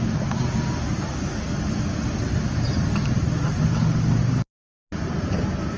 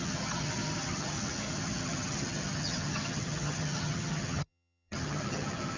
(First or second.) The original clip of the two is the first